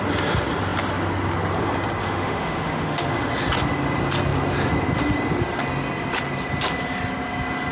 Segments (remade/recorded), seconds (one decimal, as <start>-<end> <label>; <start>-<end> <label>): 0.0-2.0 recorded; 2.0-3.1 remade; 3.1-7.7 recorded